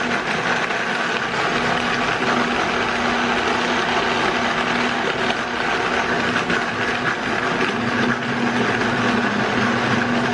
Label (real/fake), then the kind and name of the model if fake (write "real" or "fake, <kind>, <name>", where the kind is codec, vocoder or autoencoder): real